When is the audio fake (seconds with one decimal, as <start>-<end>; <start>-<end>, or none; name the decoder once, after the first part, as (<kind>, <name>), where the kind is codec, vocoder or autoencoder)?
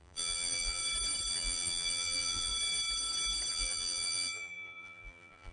0.0-0.8 (vocoder, BigVGAN v2); 1.3-2.5; 3.5-5.5